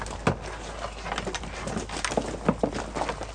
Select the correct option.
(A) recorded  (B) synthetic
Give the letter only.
A